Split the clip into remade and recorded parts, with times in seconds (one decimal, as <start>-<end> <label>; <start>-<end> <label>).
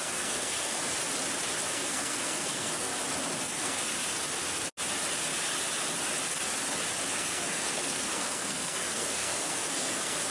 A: 0.0-1.0 remade; 1.0-1.7 recorded; 1.7-2.9 remade; 2.9-3.4 recorded; 3.4-3.9 remade; 3.9-7.1 recorded; 7.1-10.3 remade